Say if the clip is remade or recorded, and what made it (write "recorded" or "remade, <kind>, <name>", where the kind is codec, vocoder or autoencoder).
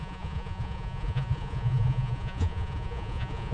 remade, vocoder, Vocos